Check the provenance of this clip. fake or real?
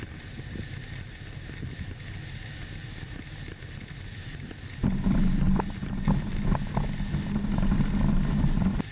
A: real